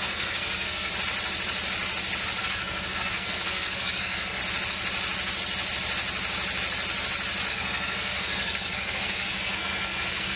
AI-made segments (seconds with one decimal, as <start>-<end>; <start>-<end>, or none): 0.0-0.9; 2.4-4.4; 7.5-10.4